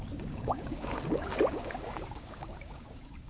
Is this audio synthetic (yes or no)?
yes